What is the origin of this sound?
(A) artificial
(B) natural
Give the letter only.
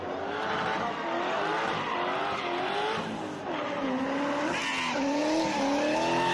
B